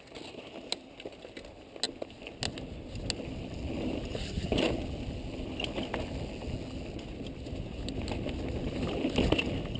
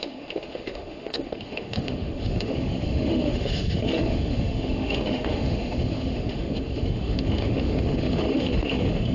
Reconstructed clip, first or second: second